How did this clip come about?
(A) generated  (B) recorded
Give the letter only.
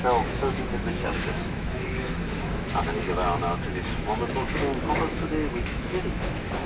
A